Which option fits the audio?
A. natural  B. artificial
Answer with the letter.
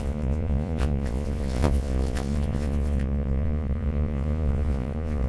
B